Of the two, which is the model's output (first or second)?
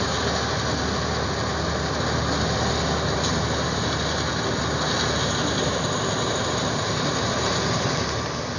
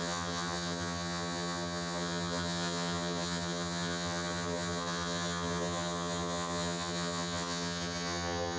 second